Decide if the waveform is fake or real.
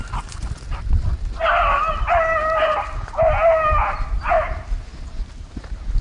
real